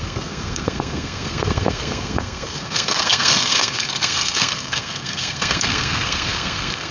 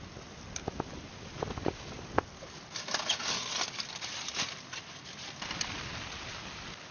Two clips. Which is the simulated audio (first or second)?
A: first